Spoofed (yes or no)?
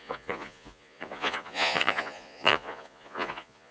yes